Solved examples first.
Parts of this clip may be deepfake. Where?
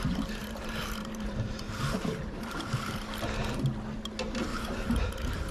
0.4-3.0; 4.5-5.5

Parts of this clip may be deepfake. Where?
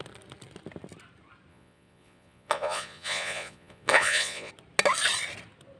1.5-4.5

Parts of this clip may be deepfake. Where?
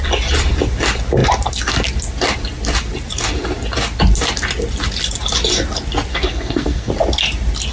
6.1-6.9